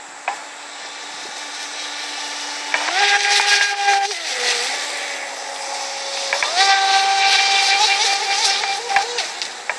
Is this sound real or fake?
real